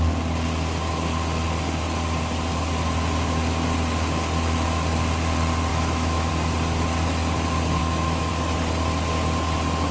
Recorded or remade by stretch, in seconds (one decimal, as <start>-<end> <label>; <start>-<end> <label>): 0.0-5.7 recorded; 5.7-6.3 remade; 6.3-7.8 recorded; 7.8-8.3 remade; 8.3-9.9 recorded